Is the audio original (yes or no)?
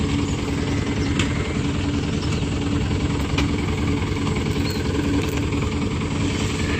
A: yes